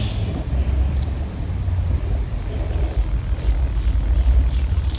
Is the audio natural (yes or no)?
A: yes